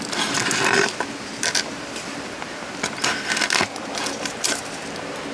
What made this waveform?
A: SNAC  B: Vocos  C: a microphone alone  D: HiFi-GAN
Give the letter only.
C